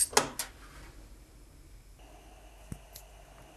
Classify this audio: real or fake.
real